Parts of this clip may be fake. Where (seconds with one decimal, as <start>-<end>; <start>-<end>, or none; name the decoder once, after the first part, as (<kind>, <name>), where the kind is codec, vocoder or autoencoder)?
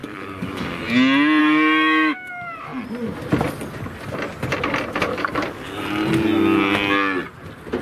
0.0-0.8 (codec, DAC); 1.4-2.3; 5.1-5.8